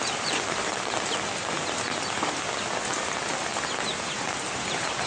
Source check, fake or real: real